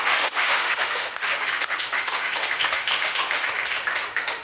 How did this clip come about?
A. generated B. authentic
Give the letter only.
A